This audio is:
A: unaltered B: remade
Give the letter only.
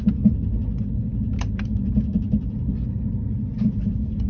A